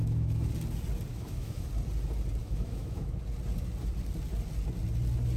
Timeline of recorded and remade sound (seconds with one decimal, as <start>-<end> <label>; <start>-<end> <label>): 0.0-0.5 remade; 0.5-1.1 recorded; 1.1-1.7 remade; 1.7-2.4 recorded; 2.4-3.2 remade; 3.2-5.4 recorded

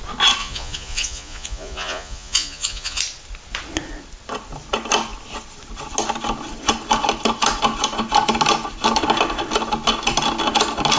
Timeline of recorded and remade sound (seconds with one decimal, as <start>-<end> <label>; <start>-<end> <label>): 0.0-0.4 recorded; 0.4-3.0 remade; 3.0-11.0 recorded

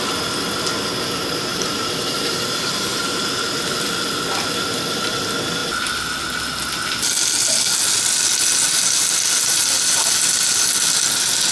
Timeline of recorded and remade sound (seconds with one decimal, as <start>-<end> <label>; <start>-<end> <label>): 0.0-1.5 recorded; 1.5-3.6 remade; 3.6-11.5 recorded

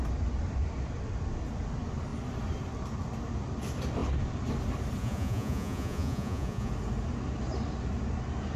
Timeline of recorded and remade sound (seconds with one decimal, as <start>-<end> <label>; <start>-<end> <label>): 0.0-5.0 recorded; 5.0-6.7 remade; 6.7-8.6 recorded

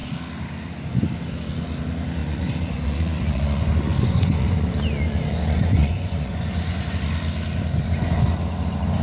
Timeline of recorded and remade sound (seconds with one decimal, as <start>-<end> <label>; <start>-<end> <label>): 0.0-2.2 recorded; 2.2-7.1 remade; 7.1-9.0 recorded

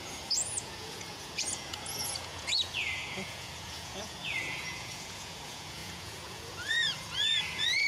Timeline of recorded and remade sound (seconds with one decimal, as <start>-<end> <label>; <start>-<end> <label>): 0.0-7.9 remade

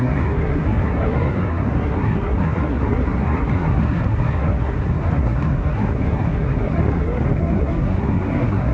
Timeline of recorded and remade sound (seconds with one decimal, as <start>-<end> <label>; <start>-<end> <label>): 0.0-8.7 remade